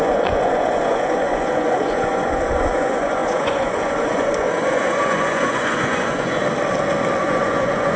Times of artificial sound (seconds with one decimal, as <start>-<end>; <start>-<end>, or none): 0.0-6.4; 7.2-8.0